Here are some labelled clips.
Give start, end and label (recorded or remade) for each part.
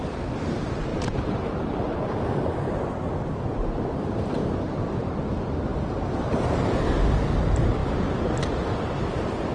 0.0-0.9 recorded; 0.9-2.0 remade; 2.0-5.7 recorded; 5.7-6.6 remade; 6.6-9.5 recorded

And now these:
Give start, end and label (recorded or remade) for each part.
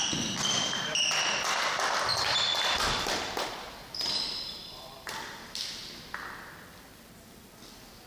0.0-4.6 recorded; 4.6-5.7 remade; 5.7-8.1 recorded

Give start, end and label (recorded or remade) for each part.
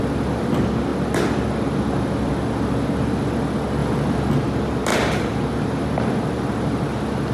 0.0-4.9 recorded; 4.9-6.4 remade; 6.4-7.3 recorded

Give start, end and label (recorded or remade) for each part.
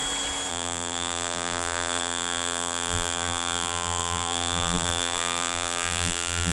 0.0-0.5 recorded; 0.5-6.5 remade